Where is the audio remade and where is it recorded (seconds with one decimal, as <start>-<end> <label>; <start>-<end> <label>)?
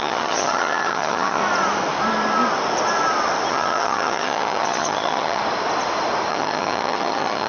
0.0-1.4 remade; 1.4-3.5 recorded; 3.5-5.4 remade; 5.4-6.3 recorded; 6.3-7.5 remade